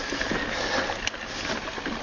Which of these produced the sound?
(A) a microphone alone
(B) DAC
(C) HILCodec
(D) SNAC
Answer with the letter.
A